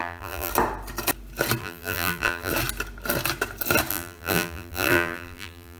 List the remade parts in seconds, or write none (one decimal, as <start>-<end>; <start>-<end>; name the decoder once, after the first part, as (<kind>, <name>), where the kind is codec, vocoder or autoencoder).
0.0-0.5 (vocoder, BigVGAN v2); 1.6-2.5; 3.9-5.8